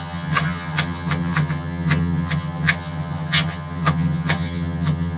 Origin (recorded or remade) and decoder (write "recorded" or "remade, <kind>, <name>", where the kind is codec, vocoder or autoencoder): remade, vocoder, HiFi-GAN